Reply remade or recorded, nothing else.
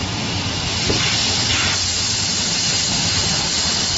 recorded